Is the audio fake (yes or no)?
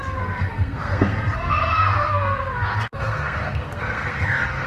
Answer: yes